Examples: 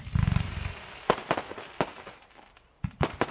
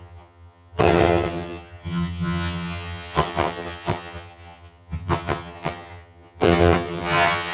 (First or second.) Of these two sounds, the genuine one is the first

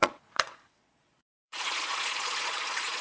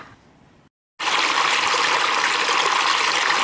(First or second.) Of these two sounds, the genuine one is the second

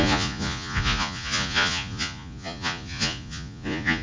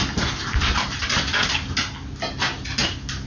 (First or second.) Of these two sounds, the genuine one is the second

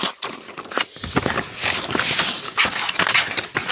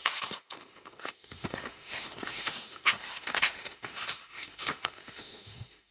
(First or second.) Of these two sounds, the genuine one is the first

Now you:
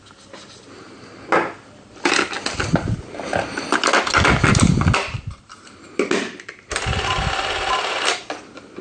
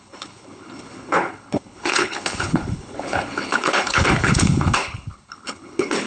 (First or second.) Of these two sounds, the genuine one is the first